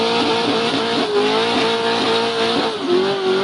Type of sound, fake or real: real